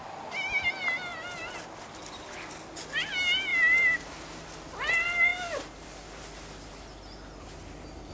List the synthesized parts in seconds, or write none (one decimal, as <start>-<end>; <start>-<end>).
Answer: none